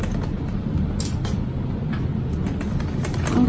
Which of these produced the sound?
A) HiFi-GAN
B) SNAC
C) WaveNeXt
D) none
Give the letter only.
D